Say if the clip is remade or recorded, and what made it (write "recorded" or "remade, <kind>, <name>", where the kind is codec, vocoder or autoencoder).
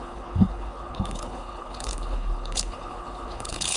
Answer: remade, codec, HILCodec